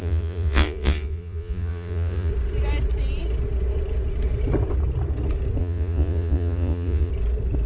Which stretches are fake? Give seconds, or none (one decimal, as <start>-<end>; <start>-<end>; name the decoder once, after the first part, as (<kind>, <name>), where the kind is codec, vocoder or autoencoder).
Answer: 0.0-2.3 (vocoder, Vocos); 5.6-7.1